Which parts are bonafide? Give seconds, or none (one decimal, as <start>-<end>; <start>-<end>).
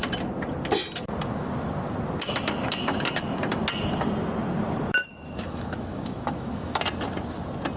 0.0-5.1; 6.8-7.8